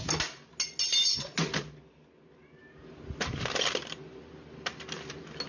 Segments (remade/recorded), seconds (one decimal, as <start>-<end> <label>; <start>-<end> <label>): 0.0-5.5 recorded